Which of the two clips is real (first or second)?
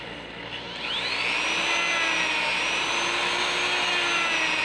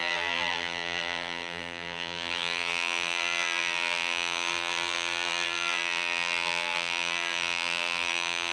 first